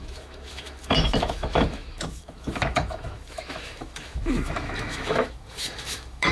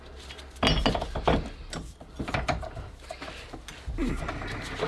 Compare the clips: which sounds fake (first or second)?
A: first